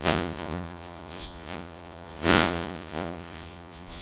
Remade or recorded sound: remade